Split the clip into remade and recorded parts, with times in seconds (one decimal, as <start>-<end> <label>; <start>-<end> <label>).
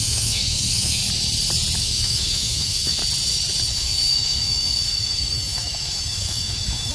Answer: 0.0-1.0 remade; 1.0-1.8 recorded; 1.8-3.0 remade; 3.0-3.7 recorded; 3.7-6.9 remade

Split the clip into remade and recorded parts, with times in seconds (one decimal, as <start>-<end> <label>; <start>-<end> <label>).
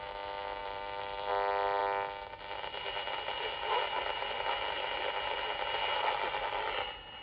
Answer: 0.0-0.6 recorded; 0.6-1.3 remade; 1.3-7.2 recorded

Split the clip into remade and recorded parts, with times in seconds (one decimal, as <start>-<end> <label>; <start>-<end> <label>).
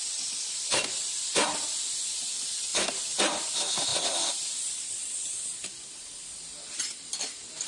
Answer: 0.0-7.7 recorded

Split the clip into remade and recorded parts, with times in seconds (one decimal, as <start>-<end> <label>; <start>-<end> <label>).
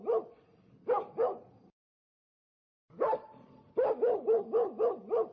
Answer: 0.0-1.2 recorded; 1.2-4.4 remade; 4.4-5.3 recorded